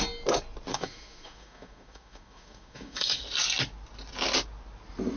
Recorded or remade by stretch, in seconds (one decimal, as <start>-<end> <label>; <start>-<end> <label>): 0.0-0.7 recorded; 0.7-3.2 remade; 3.2-5.2 recorded